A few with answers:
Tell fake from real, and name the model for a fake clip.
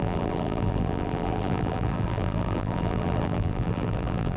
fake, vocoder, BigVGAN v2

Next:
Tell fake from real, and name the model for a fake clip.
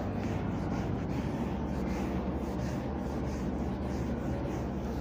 real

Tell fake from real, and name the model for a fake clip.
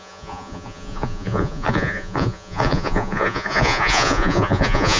fake, vocoder, Vocos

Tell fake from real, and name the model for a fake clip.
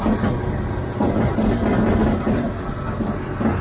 real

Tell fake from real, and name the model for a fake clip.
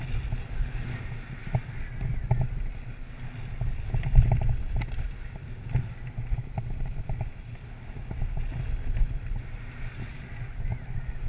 real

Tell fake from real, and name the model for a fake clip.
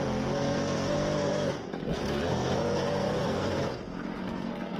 fake, codec, SNAC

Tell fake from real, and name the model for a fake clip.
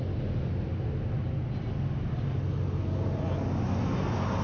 real